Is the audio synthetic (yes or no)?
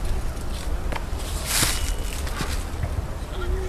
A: no